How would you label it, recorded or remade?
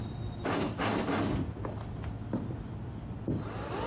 recorded